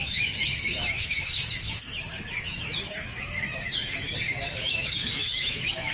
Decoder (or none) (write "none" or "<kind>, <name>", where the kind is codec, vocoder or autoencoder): autoencoder, DAC-VAE